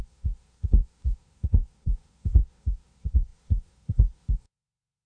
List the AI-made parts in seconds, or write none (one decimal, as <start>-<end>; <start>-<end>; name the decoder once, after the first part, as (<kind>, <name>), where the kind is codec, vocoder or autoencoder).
0.0-5.1 (codec, SNAC)